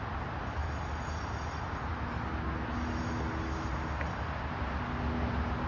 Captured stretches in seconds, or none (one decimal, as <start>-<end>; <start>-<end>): 0.0-5.7